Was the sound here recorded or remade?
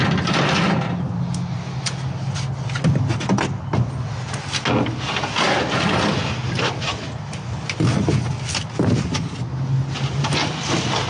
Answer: recorded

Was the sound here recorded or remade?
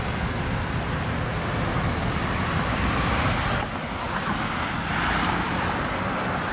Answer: recorded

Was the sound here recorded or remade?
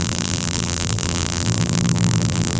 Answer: remade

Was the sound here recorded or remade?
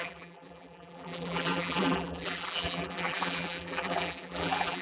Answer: remade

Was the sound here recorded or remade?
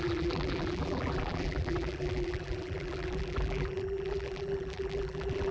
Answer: remade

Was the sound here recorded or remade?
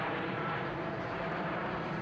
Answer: remade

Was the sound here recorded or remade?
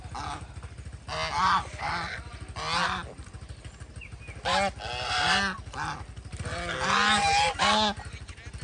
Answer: recorded